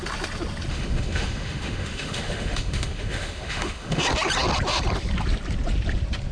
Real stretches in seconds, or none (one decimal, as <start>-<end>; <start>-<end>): 0.0-0.7; 4.0-6.3